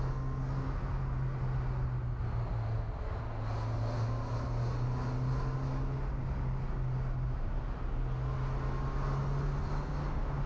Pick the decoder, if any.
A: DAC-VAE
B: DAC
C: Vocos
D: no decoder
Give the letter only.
D